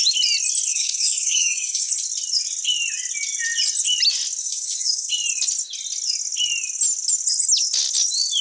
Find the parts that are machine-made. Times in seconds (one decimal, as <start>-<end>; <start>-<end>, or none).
0.7-1.9; 4.4-5.1